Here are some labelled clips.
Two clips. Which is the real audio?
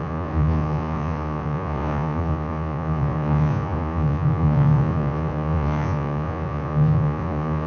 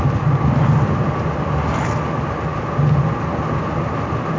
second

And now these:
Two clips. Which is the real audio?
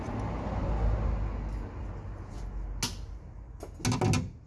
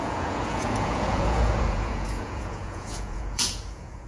first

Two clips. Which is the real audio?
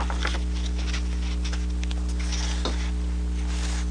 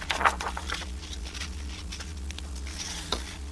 first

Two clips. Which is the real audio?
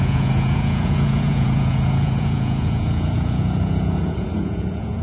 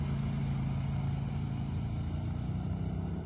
second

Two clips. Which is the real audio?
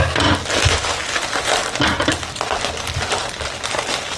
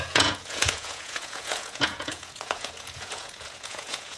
first